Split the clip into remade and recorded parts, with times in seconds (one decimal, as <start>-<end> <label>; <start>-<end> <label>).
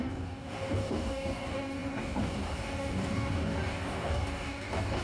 0.0-5.0 remade